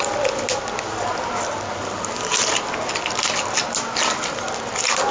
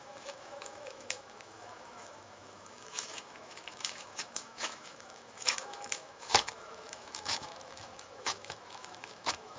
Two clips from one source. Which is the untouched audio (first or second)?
first